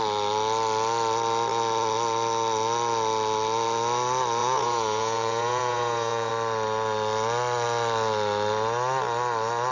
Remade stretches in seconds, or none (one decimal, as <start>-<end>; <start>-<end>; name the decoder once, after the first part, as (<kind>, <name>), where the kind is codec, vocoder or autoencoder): 4.4-6.3 (vocoder, Vocos)